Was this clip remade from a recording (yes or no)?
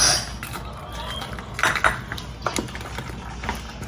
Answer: no